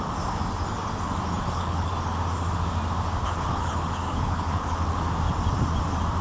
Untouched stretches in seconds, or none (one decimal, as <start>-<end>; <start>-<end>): 0.0-1.4; 1.9-3.2; 5.0-6.2